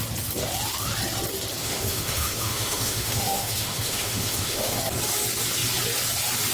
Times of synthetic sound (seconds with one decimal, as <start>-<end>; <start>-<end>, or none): 1.6-4.8